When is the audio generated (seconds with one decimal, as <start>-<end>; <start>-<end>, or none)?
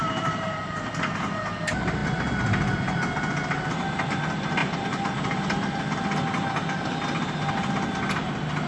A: 0.0-0.9; 4.6-5.8